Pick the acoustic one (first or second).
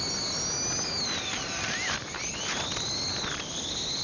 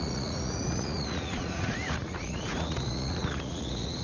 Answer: first